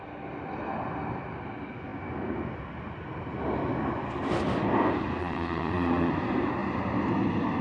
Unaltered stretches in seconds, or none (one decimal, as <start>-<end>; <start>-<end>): 0.0-5.2; 6.1-7.6